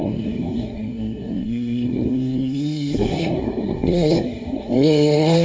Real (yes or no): no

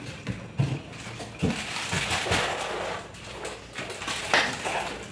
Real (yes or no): yes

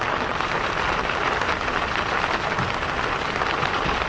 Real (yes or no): yes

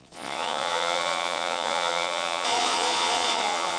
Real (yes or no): no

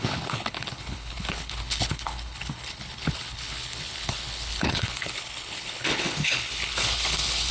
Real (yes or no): no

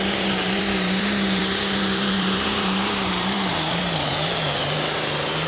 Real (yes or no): no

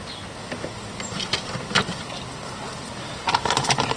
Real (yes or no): yes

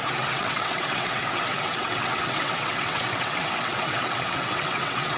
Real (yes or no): no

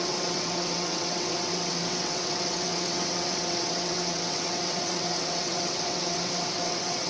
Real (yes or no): no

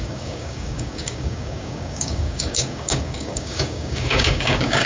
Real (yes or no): no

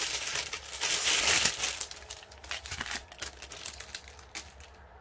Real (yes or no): yes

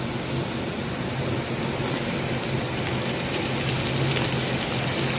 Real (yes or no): yes